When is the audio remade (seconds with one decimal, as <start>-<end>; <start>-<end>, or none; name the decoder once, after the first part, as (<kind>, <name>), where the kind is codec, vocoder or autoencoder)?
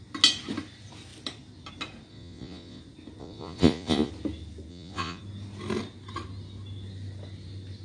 2.1-2.8 (vocoder, Vocos); 3.2-4.1; 4.7-5.2